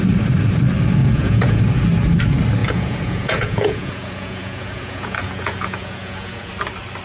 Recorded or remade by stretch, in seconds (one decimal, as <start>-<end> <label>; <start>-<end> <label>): 0.0-1.0 recorded; 1.0-1.6 remade; 1.6-2.6 recorded; 2.6-6.5 remade; 6.5-7.0 recorded